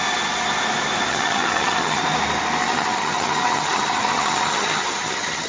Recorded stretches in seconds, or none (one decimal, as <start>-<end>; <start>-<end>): 0.0-1.1; 2.0-2.6